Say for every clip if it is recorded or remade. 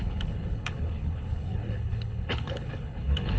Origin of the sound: remade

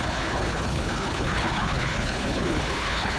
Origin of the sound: remade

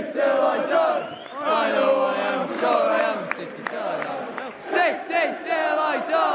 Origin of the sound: recorded